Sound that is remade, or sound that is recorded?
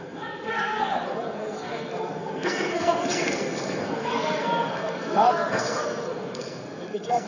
remade